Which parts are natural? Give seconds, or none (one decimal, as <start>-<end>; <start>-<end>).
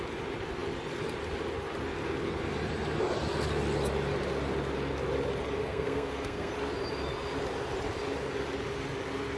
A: 0.0-5.6; 6.5-9.4